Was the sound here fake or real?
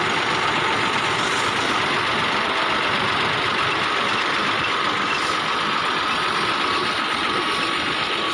real